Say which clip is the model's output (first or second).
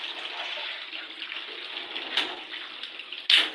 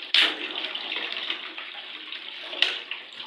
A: second